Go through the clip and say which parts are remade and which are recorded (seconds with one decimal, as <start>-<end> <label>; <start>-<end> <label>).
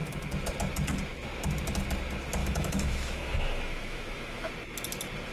0.0-2.4 recorded; 2.4-4.5 remade; 4.5-5.3 recorded